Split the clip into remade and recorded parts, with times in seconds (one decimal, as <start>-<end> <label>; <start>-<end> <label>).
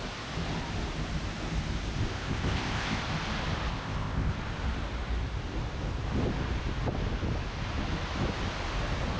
0.0-2.1 recorded; 2.1-3.0 remade; 3.0-3.7 recorded; 3.7-4.3 remade; 4.3-9.2 recorded